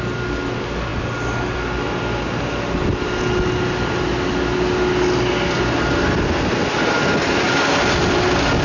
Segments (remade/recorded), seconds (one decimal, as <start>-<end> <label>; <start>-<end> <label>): 0.0-8.6 recorded